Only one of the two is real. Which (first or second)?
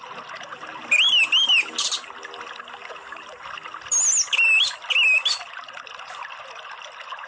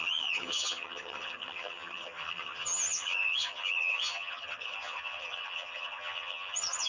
first